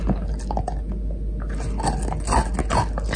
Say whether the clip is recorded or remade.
recorded